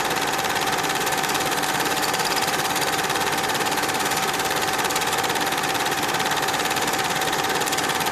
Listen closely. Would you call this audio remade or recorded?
remade